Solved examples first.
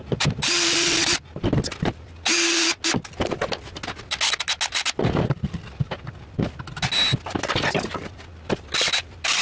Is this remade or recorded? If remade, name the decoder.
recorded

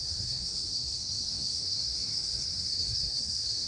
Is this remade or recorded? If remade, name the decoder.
remade, codec, SNAC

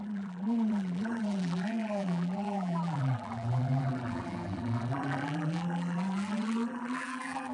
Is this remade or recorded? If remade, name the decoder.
remade, vocoder, BigVGAN v2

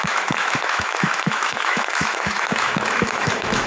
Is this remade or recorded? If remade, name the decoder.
remade, autoencoder, DAC-VAE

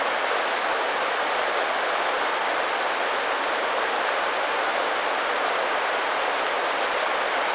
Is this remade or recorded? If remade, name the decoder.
recorded